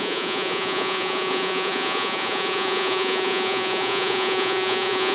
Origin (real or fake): fake